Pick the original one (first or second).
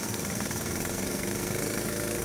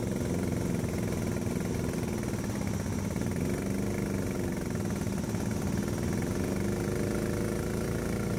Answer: second